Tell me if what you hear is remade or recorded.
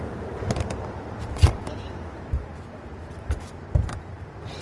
remade